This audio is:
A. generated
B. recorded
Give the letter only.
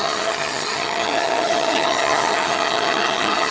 A